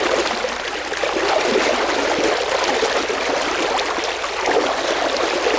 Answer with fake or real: real